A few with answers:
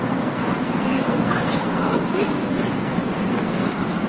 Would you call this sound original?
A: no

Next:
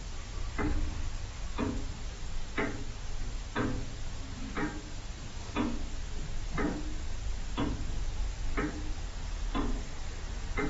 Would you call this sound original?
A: yes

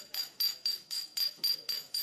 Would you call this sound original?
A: no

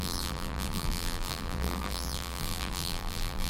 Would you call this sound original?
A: no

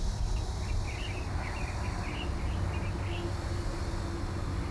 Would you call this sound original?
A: yes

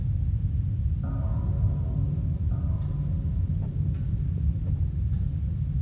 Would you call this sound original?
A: yes